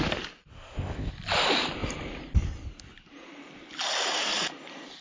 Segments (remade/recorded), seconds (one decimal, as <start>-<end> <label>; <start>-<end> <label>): 0.0-0.5 recorded; 0.5-1.1 remade; 1.1-5.0 recorded